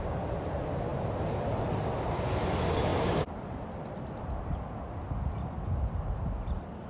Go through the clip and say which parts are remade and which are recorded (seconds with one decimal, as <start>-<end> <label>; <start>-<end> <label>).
0.0-6.9 recorded